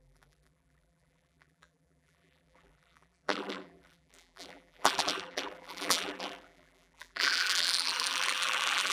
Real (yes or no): no